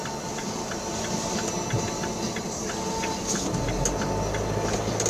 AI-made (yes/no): no